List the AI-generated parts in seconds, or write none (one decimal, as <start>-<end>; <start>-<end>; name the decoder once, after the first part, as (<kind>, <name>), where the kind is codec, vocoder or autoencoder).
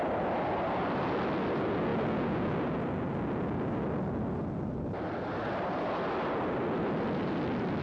none